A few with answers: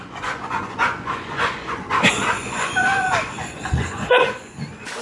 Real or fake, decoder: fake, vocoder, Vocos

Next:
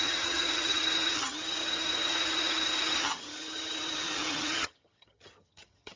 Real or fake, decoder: fake, vocoder, HiFi-GAN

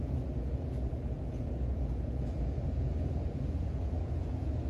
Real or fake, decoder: fake, vocoder, Vocos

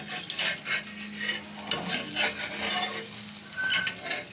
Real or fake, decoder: real